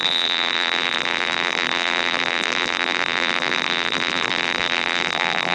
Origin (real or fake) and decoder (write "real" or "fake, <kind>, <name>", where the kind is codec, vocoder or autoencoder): fake, vocoder, BigVGAN v2